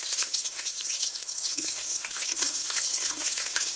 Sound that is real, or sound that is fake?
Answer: fake